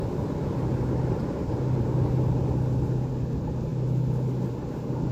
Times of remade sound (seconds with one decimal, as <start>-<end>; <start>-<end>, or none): none